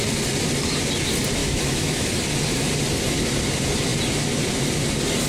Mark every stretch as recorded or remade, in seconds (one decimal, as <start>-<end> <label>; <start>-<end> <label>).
0.0-1.4 recorded; 1.4-2.1 remade; 2.1-5.3 recorded